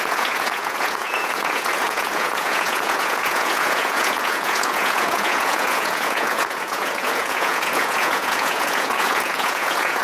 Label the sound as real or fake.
fake